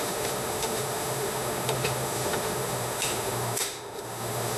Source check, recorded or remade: remade